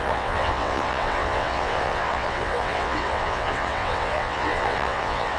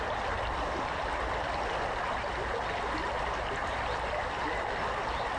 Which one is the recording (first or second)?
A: second